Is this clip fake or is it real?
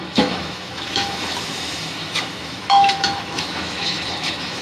fake